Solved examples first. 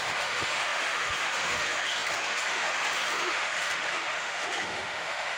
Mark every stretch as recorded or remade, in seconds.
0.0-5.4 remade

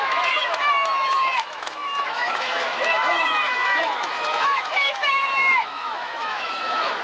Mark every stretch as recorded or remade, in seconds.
0.0-7.0 remade